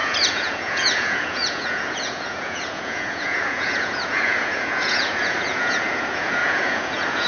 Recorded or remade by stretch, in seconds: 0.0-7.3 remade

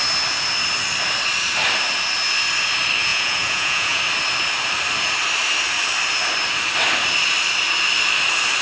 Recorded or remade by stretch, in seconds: 0.0-3.1 recorded; 3.1-4.0 remade; 4.0-8.6 recorded

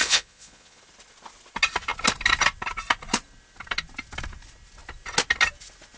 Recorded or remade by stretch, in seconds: 0.0-0.8 remade; 0.8-6.0 recorded

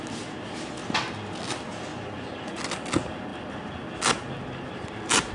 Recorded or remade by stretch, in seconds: 0.0-1.9 recorded; 1.9-2.6 remade; 2.6-5.3 recorded